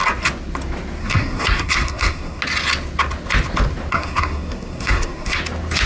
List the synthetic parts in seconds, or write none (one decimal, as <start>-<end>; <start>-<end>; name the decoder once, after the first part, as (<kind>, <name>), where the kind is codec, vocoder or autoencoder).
1.0-2.4 (codec, SNAC); 3.9-5.4